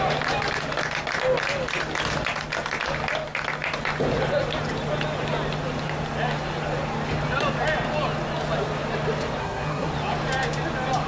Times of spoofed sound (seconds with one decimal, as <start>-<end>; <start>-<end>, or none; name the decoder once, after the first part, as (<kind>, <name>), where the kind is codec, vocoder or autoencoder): 9.4-9.9 (codec, SNAC)

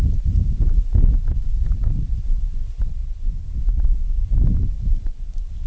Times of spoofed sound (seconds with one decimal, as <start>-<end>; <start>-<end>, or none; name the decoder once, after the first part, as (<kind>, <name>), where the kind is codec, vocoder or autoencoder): 0.0-3.0 (vocoder, BigVGAN v2); 3.6-4.0; 4.9-5.7

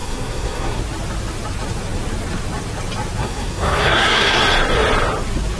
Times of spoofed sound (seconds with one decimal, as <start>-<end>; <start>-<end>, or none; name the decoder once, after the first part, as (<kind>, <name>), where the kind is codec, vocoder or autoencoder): 0.0-0.8 (codec, SNAC); 3.2-4.4